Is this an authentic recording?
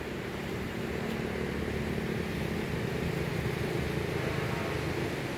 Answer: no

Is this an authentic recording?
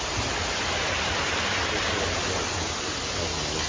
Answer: yes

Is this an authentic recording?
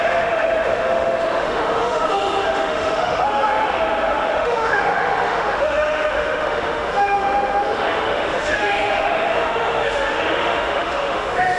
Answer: no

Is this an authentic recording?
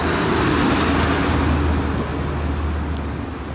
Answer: yes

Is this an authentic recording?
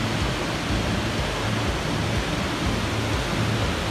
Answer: yes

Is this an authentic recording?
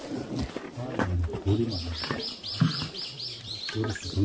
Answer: yes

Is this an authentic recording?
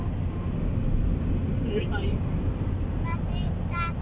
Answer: yes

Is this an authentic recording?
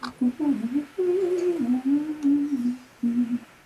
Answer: yes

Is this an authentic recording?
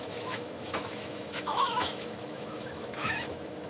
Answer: no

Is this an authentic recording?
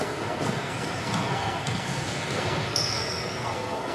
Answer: no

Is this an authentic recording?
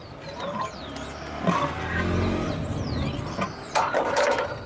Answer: yes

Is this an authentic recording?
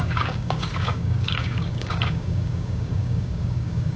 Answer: no